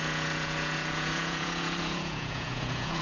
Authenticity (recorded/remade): remade